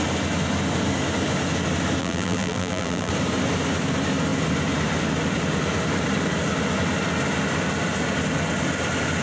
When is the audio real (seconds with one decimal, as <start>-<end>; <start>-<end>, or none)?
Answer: 0.0-2.0; 3.1-9.2

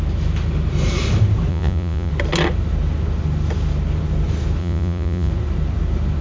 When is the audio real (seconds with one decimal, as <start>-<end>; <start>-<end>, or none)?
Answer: 0.0-1.5; 2.1-4.6; 5.3-6.2

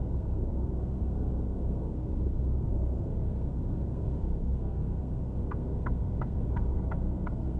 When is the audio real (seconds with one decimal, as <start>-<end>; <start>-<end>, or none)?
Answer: none

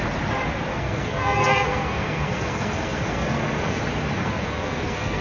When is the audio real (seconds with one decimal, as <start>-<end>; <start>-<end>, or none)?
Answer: 0.0-0.7; 3.8-4.2

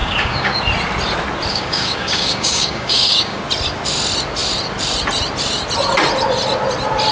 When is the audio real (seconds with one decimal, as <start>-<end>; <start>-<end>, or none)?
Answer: 0.6-1.5; 3.4-7.1

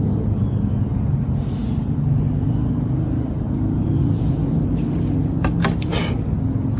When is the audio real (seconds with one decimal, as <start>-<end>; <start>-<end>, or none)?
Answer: 0.0-0.9; 4.3-6.8

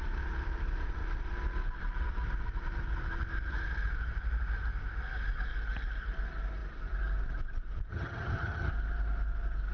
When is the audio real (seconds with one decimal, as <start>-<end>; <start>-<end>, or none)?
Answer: 0.0-7.9; 8.7-9.7

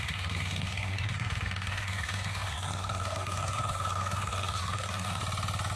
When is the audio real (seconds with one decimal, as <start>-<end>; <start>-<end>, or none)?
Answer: 5.2-5.8